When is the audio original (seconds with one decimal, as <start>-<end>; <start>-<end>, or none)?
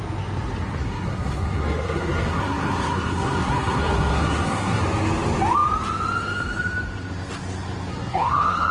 0.0-0.8; 4.8-7.9